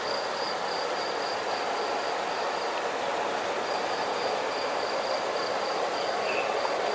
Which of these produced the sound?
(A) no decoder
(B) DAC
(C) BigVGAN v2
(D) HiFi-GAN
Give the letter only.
A